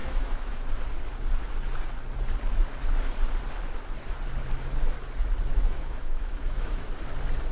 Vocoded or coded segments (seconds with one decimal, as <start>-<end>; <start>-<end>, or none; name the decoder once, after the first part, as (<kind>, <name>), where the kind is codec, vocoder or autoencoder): 0.0-0.6 (autoencoder, DAC-VAE); 5.5-6.9